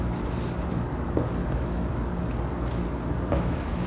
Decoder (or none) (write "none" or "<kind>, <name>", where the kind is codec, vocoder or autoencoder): codec, DAC